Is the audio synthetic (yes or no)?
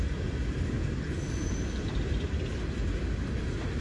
no